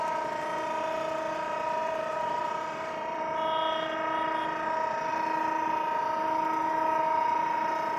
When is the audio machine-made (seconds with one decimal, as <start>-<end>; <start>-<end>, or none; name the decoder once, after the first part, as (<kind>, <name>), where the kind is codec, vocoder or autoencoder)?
1.8-3.2 (vocoder, BigVGAN v2)